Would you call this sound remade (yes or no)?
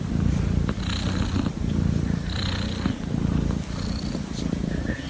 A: no